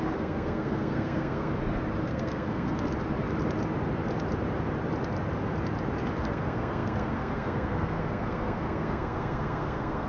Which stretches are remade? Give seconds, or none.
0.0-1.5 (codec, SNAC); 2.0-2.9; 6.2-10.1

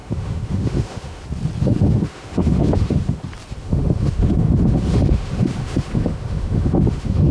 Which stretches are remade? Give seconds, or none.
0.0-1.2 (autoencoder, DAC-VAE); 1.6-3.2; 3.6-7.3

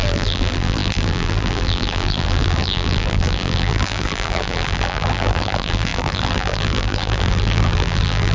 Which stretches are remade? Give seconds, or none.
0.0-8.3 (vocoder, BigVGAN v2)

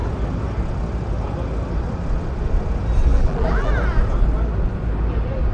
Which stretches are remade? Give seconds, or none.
3.1-3.7 (vocoder, BigVGAN v2)